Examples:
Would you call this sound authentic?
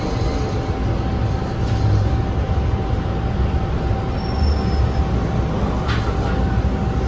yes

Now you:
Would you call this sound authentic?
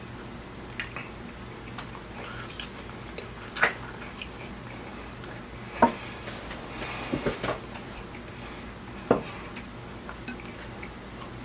yes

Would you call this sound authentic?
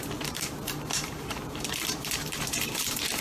no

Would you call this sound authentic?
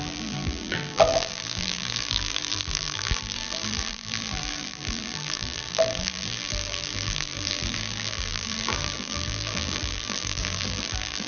no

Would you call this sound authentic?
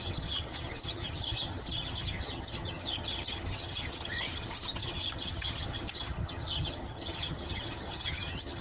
no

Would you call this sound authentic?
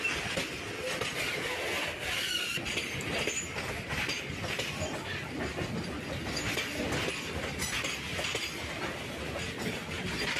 yes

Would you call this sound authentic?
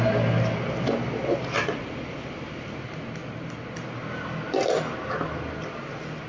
yes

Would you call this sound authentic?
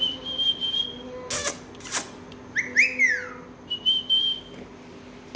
yes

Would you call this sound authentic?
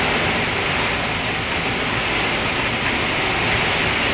yes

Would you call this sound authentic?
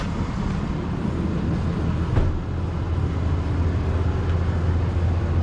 yes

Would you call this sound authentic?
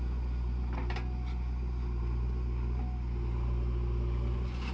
yes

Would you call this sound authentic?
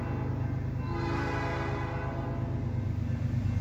yes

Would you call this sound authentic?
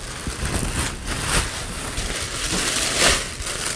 yes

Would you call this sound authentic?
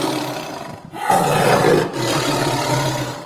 yes